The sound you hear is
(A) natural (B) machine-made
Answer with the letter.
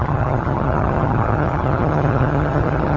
B